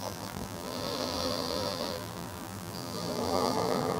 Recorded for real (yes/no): no